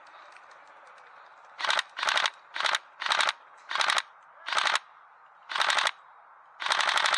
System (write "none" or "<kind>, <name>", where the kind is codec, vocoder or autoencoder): none